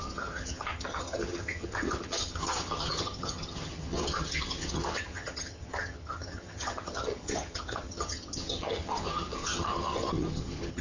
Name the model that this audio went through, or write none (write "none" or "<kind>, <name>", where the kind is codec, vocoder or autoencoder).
vocoder, HiFi-GAN